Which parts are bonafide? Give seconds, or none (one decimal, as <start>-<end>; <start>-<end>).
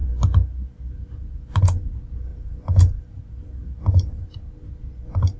0.0-2.3; 3.2-3.6; 4.3-5.4